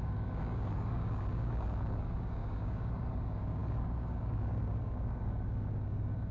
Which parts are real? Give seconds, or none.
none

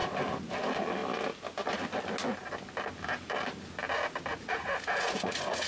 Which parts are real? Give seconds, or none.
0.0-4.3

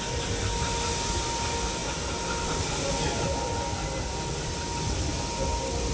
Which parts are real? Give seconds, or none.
0.0-5.9

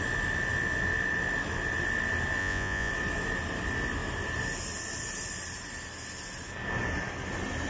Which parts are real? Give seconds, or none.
0.0-2.4; 2.9-7.7